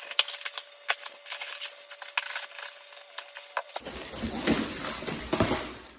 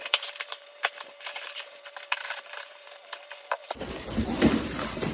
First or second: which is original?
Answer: first